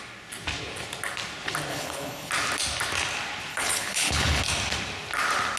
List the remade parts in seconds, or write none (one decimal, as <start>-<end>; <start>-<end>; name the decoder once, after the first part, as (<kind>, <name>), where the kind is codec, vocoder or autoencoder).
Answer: 1.7-2.3 (codec, HILCodec); 3.5-4.4